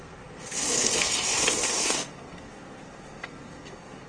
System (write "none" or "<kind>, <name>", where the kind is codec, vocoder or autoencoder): codec, SNAC